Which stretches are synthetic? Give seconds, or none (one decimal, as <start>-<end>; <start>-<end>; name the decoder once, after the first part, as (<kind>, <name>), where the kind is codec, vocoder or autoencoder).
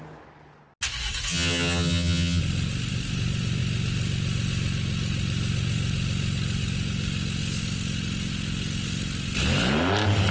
1.3-2.4 (vocoder, HiFi-GAN)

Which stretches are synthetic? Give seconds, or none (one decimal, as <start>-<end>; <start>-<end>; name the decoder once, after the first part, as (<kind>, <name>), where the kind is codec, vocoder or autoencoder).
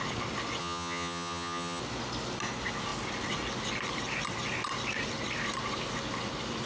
0.6-1.8 (vocoder, HiFi-GAN)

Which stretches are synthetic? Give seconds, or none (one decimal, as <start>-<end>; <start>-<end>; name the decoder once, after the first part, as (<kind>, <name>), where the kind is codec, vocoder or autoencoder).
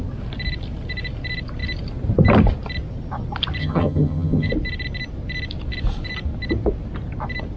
3.6-4.5 (vocoder, HiFi-GAN)